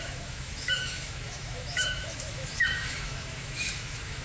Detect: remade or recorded remade